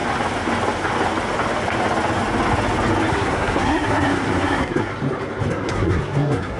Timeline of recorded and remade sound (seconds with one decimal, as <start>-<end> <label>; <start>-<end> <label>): 0.0-3.1 recorded; 3.1-4.9 remade; 4.9-5.5 recorded; 5.5-6.6 remade